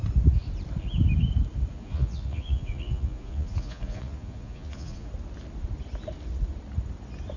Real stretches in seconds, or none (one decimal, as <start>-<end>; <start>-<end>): 0.0-1.7; 5.1-7.4